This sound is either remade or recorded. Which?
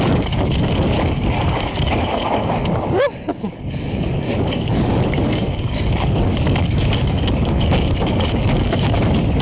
remade